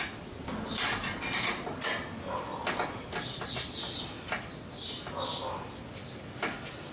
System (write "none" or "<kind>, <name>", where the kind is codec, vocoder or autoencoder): none